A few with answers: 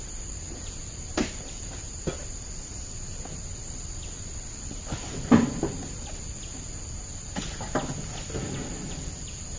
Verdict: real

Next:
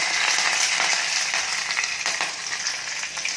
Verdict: real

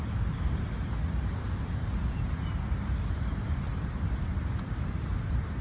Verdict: fake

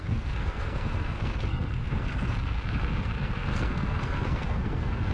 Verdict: fake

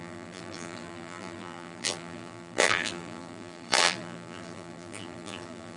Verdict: fake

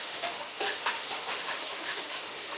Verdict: fake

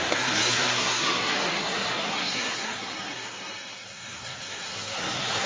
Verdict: fake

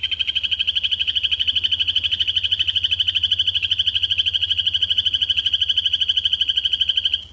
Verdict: real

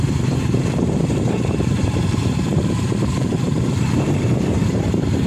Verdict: fake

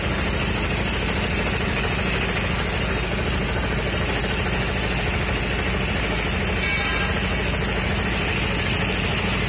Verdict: real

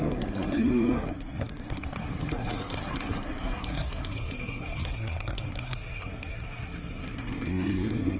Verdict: fake